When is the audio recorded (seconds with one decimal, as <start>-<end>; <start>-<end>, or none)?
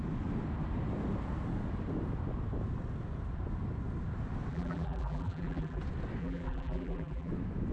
0.0-4.5; 5.8-6.2; 7.3-7.7